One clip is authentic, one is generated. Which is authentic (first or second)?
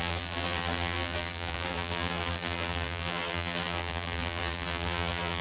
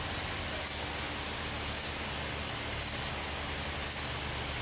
second